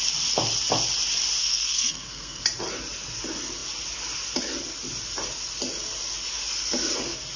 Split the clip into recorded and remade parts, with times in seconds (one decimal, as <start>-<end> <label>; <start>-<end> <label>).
0.0-1.4 recorded; 1.4-2.4 remade; 2.4-7.4 recorded